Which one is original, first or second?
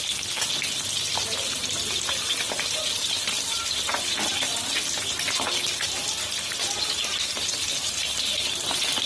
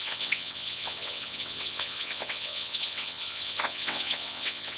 first